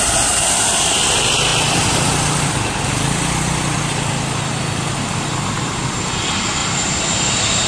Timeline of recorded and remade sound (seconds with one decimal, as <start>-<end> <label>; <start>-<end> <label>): 0.0-6.6 recorded; 6.6-7.7 remade